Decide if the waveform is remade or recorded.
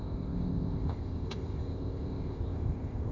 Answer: remade